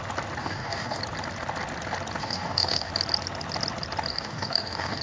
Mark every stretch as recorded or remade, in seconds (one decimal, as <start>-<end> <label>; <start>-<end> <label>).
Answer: 0.0-0.4 recorded; 0.4-1.0 remade; 1.0-2.2 recorded; 2.2-2.9 remade; 2.9-4.1 recorded; 4.1-5.0 remade